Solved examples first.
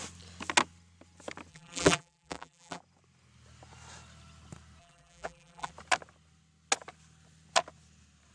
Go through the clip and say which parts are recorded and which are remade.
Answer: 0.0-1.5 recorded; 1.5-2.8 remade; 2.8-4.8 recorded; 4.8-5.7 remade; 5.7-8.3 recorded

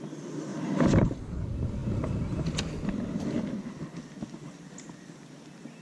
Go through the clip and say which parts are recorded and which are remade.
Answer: 0.0-5.8 recorded

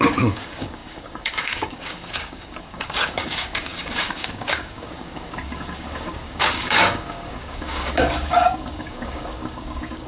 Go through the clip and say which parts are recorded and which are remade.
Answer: 0.0-10.1 remade

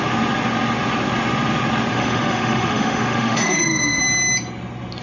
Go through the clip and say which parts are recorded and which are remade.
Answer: 0.0-1.9 recorded; 1.9-4.0 remade; 4.0-5.0 recorded

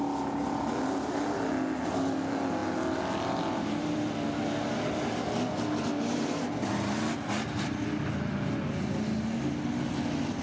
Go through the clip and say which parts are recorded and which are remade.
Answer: 0.0-10.4 recorded

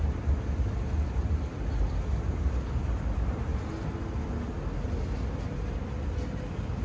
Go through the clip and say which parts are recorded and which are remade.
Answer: 0.0-6.8 recorded

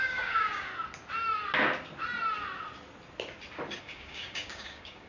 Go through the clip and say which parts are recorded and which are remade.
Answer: 0.0-0.7 remade; 0.7-3.8 recorded; 3.8-5.1 remade

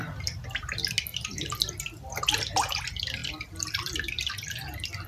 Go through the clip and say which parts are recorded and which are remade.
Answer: 0.0-1.1 recorded; 1.1-2.2 remade; 2.2-3.2 recorded; 3.2-4.3 remade; 4.3-5.1 recorded